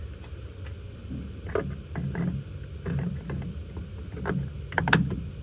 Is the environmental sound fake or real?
real